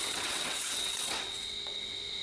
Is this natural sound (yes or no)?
no